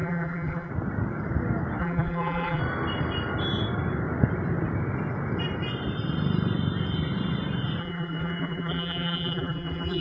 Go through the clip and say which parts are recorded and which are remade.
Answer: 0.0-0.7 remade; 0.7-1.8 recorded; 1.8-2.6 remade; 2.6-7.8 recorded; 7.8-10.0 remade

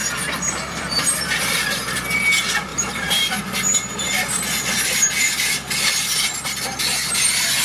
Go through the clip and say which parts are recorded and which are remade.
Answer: 0.0-2.7 recorded; 2.7-3.3 remade; 3.3-7.6 recorded